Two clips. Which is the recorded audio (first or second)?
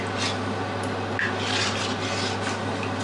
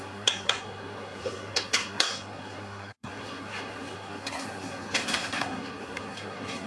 first